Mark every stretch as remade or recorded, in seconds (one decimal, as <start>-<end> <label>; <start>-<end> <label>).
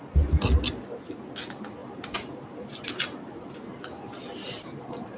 0.0-1.8 recorded; 1.8-5.2 remade